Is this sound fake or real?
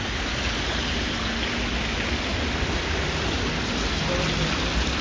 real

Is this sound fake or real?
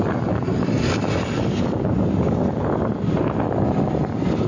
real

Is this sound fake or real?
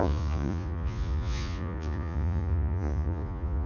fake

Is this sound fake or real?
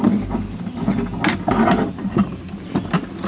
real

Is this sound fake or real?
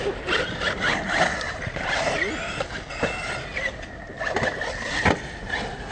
real